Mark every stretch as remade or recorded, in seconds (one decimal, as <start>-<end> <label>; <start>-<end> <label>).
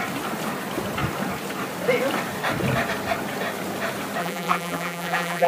0.0-4.2 recorded; 4.2-5.5 remade